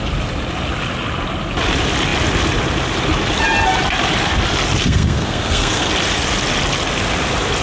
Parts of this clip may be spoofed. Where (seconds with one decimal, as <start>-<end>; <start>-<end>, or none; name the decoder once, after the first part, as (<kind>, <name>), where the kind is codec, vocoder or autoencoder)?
4.8-5.9 (codec, SNAC)